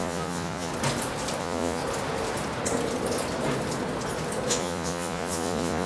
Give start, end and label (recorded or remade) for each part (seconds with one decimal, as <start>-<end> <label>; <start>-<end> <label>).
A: 0.0-0.7 remade; 0.7-1.4 recorded; 1.4-1.8 remade; 1.8-4.5 recorded; 4.5-5.9 remade